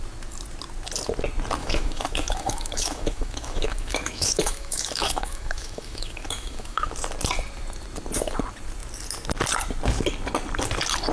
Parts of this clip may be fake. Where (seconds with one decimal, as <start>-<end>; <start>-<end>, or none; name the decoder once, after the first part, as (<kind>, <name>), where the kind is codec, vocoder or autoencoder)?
1.6-6.9 (autoencoder, DAC-VAE)